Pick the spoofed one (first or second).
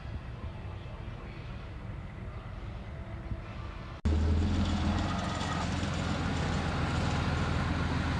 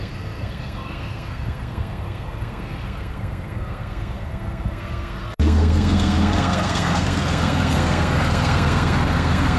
second